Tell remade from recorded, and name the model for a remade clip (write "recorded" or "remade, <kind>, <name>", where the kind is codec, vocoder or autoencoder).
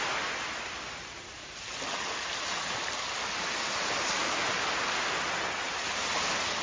recorded